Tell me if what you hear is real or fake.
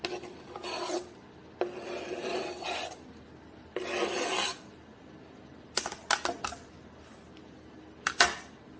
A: real